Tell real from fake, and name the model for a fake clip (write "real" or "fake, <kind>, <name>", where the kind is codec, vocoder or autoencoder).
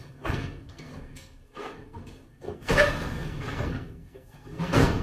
fake, codec, SNAC